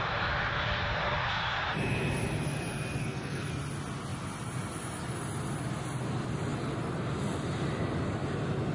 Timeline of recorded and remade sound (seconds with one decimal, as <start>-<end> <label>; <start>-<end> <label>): 0.0-3.0 recorded; 3.0-3.5 remade; 3.5-8.7 recorded